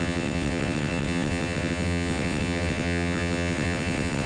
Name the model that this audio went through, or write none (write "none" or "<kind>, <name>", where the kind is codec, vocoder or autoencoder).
vocoder, WaveNeXt